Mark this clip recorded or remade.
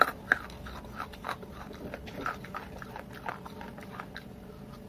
recorded